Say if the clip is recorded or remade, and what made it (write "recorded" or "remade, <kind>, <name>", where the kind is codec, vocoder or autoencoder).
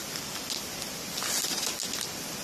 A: recorded